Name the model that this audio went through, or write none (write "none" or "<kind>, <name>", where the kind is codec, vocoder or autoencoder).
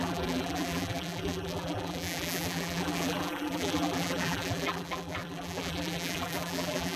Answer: vocoder, BigVGAN v2